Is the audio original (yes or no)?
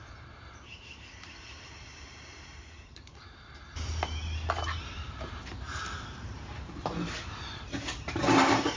no